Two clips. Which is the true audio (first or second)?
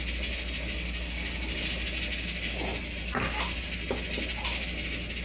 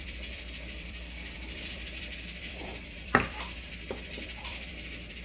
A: first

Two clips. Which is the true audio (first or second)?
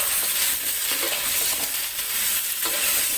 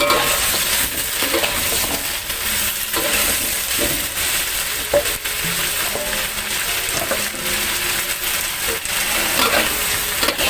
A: second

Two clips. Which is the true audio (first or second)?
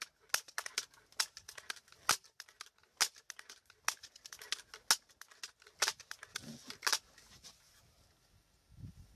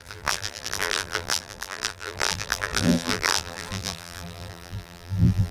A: first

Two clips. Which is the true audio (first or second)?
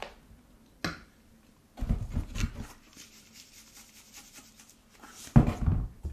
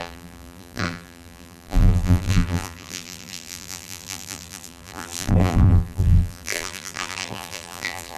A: first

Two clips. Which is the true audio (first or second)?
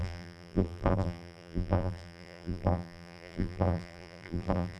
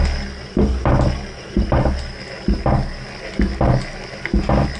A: second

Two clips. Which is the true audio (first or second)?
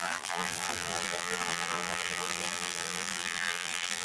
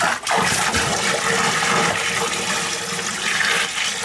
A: second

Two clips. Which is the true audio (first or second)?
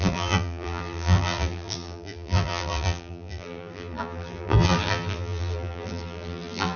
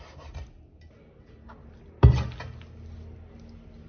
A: second